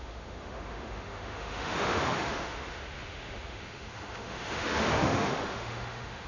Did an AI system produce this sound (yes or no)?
yes